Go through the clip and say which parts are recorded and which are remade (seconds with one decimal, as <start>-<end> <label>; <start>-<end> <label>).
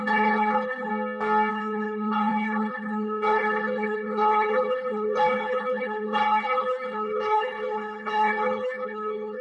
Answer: 0.0-0.9 remade; 0.9-1.5 recorded; 1.5-9.4 remade